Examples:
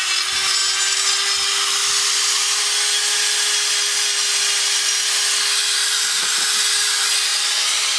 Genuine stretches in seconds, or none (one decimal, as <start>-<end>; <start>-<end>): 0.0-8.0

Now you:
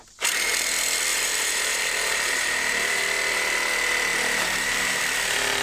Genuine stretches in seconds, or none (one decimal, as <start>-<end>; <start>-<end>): 0.0-1.1; 3.0-4.1; 5.0-5.6

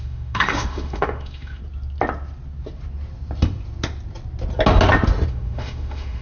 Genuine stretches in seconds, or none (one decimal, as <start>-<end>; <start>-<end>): 1.6-5.3